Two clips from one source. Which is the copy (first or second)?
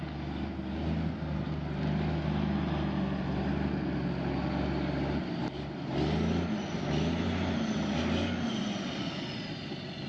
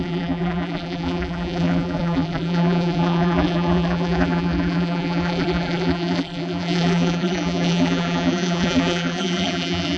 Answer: second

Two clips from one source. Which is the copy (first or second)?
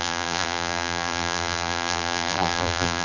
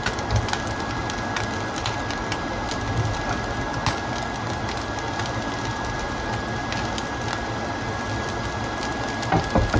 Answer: first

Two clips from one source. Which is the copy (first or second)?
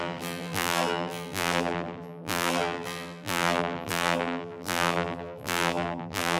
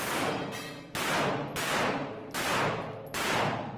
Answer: first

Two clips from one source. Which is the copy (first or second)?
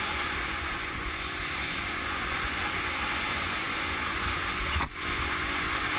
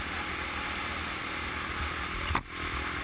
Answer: first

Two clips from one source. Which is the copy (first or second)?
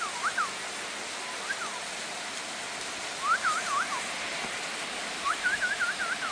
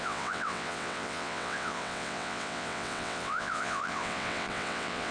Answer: second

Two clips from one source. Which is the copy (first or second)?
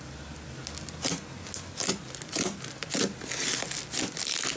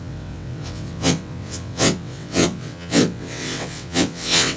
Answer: second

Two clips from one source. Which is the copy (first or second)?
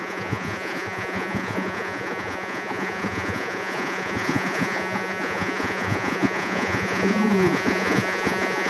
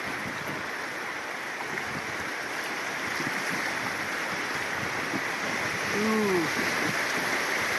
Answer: first